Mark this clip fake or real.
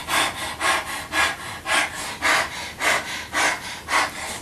real